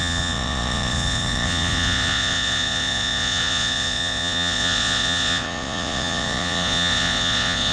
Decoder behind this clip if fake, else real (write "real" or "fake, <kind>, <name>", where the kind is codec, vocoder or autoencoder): fake, vocoder, Vocos